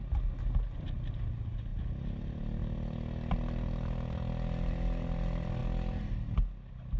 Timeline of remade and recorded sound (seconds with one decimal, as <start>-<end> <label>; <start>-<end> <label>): 0.0-7.0 recorded